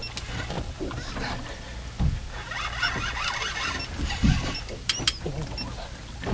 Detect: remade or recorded recorded